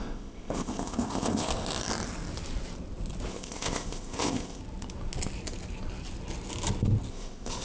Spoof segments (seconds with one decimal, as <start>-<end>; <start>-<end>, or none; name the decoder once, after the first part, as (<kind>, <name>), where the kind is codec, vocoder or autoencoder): 0.0-1.5 (codec, ZipCodec); 3.3-4.6; 7.1-7.6